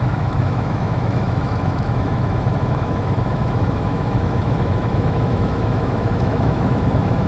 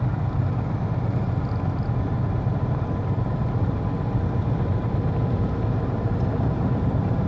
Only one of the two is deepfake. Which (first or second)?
first